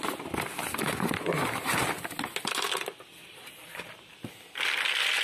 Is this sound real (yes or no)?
yes